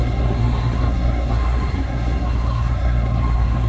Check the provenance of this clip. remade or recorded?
remade